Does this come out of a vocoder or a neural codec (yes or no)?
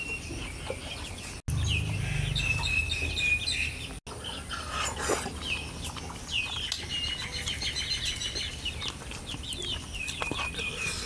no